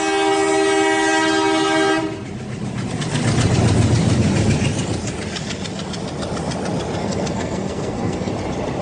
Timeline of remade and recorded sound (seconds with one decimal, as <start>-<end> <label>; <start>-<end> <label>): 0.0-7.0 recorded; 7.0-8.3 remade; 8.3-8.8 recorded